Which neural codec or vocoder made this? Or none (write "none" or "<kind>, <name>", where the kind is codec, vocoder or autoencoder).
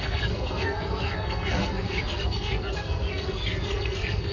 codec, SNAC